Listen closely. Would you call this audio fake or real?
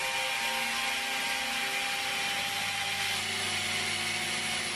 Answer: real